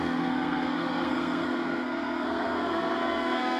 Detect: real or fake fake